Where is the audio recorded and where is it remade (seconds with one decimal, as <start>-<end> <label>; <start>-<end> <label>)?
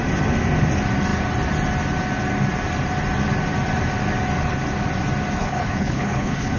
0.0-5.4 recorded; 5.4-6.6 remade